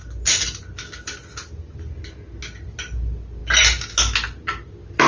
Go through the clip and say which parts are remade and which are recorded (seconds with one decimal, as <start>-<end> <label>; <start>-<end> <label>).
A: 0.0-5.1 recorded